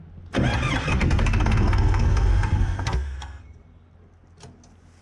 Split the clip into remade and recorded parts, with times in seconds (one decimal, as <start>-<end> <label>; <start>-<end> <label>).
0.0-0.9 recorded; 0.9-3.4 remade; 3.4-5.0 recorded